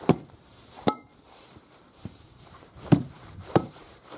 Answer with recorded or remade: remade